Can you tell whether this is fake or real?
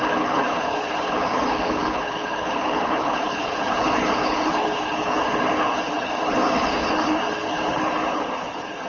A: fake